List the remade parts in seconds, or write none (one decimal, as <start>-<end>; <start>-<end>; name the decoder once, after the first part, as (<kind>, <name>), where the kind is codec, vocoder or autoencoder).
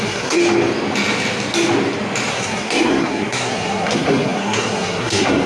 0.0-0.4 (codec, SNAC); 2.3-5.5